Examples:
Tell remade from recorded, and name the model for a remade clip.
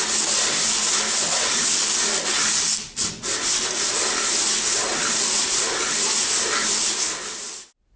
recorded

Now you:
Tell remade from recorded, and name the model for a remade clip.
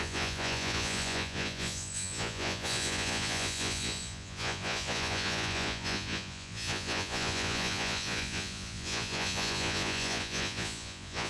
remade, vocoder, Vocos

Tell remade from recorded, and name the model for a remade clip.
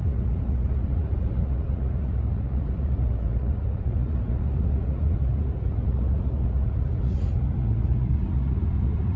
remade, vocoder, Vocos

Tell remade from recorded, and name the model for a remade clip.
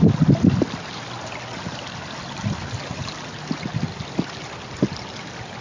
recorded